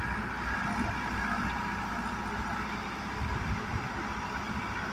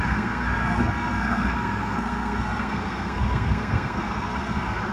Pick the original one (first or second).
first